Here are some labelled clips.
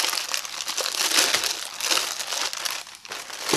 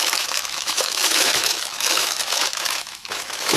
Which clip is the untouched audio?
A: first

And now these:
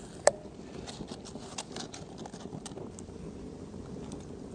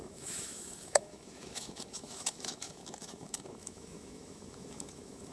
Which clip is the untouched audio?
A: first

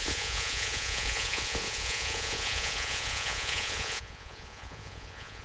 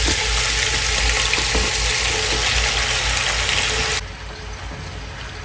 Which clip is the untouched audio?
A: second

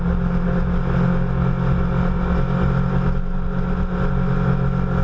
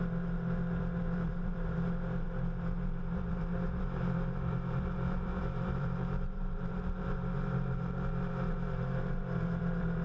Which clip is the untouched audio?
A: first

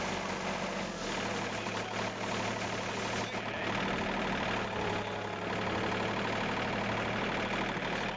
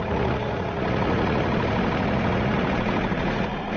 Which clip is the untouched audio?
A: first